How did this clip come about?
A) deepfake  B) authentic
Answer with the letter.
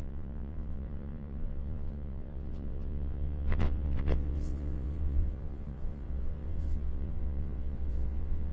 A